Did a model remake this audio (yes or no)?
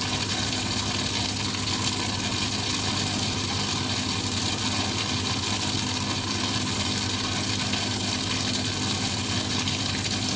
no